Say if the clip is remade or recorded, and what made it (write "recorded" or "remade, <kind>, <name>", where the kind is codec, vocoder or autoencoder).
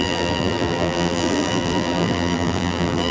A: remade, vocoder, BigVGAN v2